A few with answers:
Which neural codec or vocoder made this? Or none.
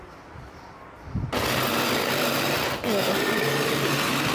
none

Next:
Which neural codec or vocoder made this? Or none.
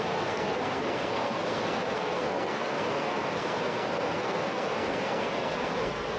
codec, SNAC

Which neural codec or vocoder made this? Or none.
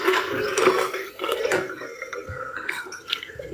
codec, SNAC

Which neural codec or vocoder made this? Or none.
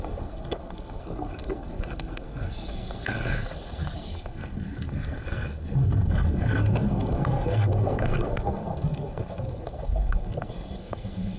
codec, SNAC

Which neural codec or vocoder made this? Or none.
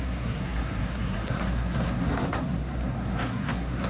codec, SNAC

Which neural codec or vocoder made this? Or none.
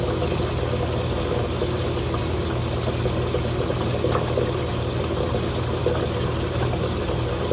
none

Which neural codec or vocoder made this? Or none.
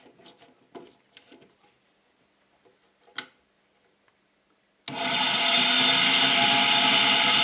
none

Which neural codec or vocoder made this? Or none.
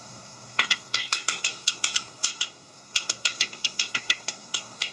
codec, SNAC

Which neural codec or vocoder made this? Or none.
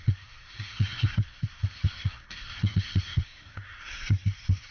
codec, SNAC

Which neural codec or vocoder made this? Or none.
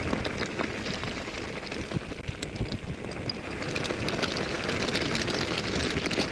none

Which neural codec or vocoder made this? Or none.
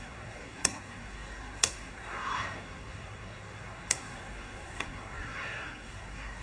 codec, SNAC